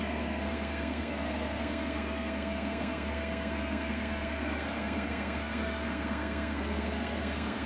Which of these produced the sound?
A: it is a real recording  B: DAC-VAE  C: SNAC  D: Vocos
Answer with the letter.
C